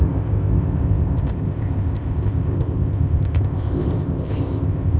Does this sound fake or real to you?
fake